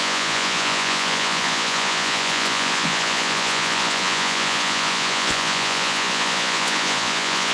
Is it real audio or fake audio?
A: fake